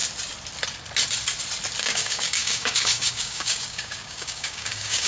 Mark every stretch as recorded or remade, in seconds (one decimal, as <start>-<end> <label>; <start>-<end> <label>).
0.0-1.8 recorded; 1.8-5.1 remade